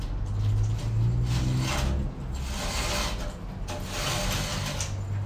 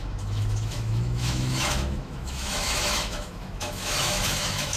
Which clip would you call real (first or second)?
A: first